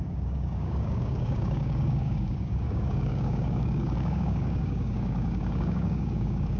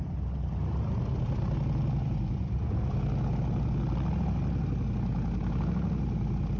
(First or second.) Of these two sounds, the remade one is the first